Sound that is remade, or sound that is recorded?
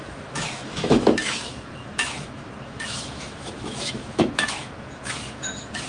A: remade